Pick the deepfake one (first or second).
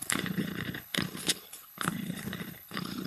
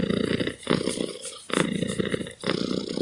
first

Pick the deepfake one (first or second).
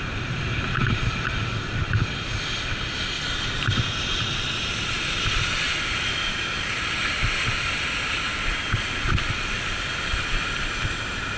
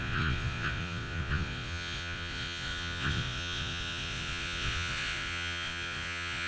second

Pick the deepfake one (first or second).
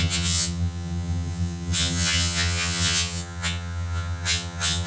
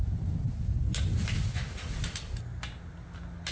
first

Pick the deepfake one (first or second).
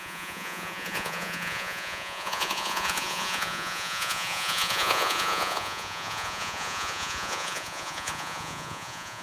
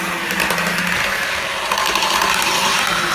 first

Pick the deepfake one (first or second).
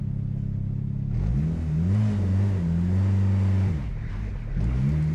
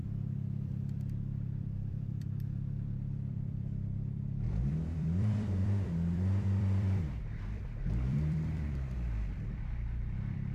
second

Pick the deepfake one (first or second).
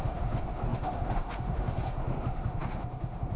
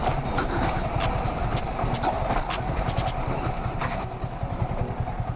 first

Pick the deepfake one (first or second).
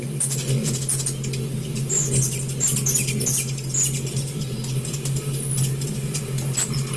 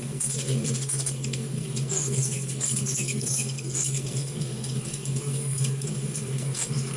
second